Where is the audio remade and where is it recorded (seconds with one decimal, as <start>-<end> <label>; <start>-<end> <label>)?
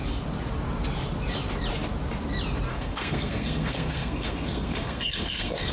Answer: 0.0-2.7 recorded; 2.7-5.7 remade